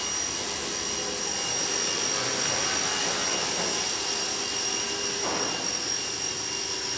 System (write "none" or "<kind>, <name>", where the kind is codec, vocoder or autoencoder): none